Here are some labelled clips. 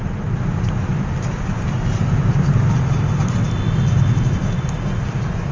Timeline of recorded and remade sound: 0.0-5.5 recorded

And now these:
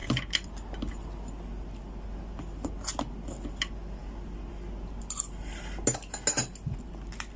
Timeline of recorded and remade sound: 0.0-7.4 recorded

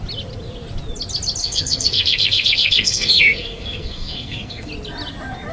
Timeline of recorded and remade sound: 0.0-1.4 recorded; 1.4-4.7 remade; 4.7-5.5 recorded

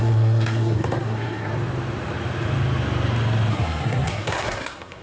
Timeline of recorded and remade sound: 0.0-1.5 remade; 1.5-3.5 recorded; 3.5-5.0 remade